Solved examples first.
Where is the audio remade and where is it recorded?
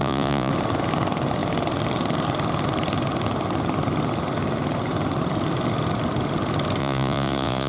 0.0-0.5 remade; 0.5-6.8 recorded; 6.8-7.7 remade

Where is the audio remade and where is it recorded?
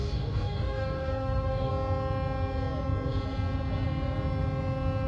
0.0-1.7 remade; 1.7-5.1 recorded